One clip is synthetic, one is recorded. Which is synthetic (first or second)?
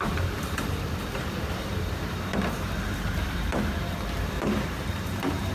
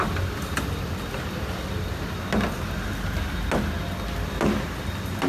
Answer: first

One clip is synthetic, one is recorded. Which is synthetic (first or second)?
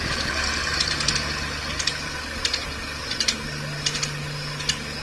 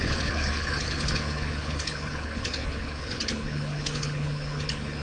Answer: second